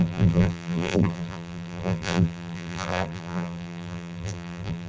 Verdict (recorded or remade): remade